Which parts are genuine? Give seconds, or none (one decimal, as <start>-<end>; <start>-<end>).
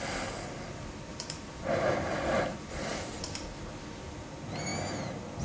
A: 0.0-1.1; 2.1-5.4